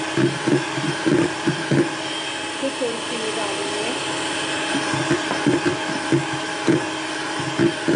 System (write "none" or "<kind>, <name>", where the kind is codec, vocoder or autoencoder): none